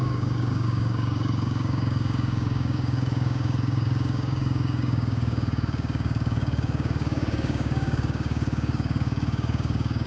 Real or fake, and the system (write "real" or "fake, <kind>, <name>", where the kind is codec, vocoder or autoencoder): fake, codec, DAC